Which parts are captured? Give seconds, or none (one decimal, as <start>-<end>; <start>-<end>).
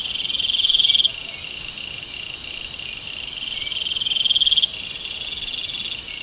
0.0-6.2